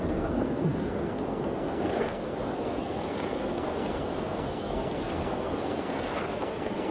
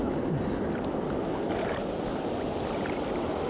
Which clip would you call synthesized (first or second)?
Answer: first